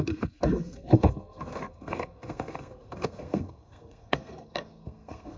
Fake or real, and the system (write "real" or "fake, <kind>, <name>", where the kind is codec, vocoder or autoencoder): fake, codec, SNAC